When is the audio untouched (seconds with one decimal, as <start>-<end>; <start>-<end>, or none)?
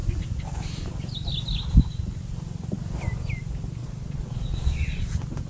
0.0-3.8; 5.0-5.5